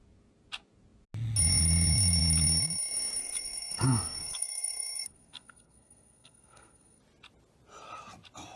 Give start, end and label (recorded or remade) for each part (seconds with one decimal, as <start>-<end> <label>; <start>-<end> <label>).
0.0-3.2 recorded; 3.2-7.0 remade; 7.0-8.6 recorded